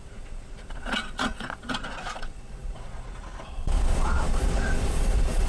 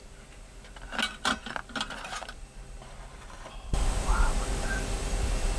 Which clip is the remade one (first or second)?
first